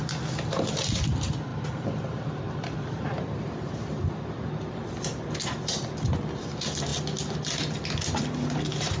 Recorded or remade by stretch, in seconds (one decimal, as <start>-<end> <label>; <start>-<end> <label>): 0.0-1.5 recorded; 1.5-4.0 remade; 4.0-9.0 recorded